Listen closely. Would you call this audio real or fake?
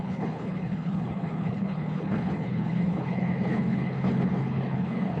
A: fake